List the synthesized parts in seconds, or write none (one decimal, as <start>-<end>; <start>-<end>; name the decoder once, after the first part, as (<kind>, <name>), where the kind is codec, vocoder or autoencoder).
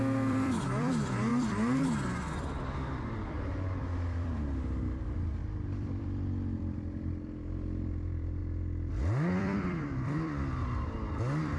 0.0-8.4 (vocoder, BigVGAN v2); 8.9-11.6